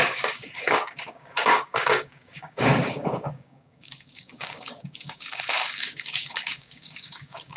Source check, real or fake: fake